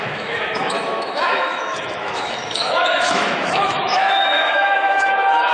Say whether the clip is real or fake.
fake